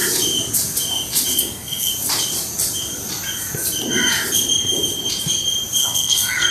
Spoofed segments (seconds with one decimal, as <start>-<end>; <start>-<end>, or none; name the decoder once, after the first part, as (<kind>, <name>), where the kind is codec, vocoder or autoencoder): 1.4-1.9 (codec, SNAC); 5.8-6.5